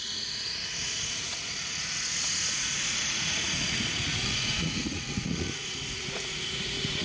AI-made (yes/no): yes